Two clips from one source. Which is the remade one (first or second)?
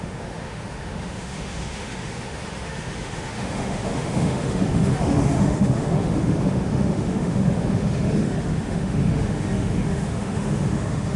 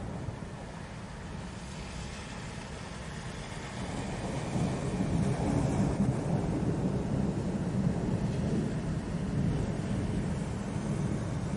first